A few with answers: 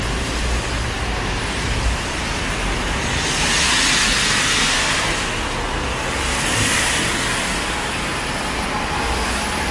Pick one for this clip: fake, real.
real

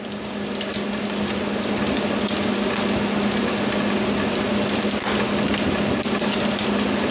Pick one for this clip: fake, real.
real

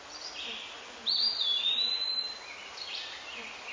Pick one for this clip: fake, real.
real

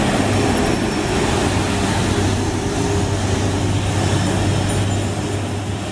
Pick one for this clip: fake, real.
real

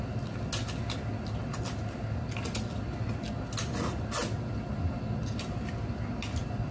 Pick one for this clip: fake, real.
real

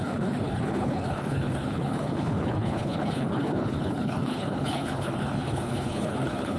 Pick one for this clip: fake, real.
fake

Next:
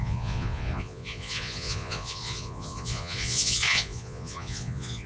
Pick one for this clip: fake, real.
fake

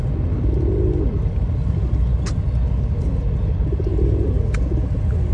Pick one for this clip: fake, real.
real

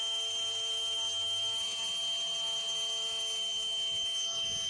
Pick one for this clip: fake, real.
real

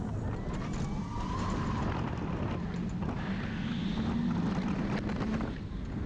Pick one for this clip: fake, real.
real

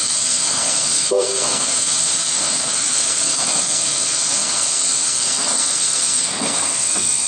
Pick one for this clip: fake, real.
fake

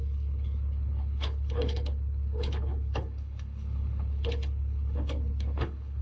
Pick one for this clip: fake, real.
fake